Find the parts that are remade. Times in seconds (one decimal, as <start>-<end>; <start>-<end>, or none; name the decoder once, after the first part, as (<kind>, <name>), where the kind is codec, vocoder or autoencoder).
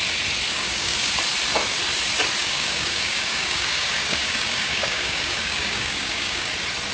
0.5-1.1 (codec, DAC); 2.4-6.5